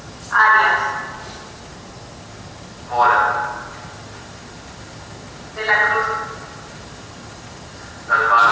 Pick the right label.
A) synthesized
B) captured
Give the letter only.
B